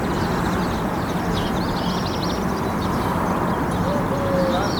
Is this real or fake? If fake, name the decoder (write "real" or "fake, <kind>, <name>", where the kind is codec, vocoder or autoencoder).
real